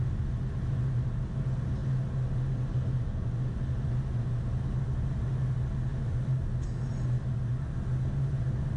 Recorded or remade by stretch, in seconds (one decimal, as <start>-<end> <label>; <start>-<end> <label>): 0.0-5.9 recorded; 5.9-6.5 remade; 6.5-8.8 recorded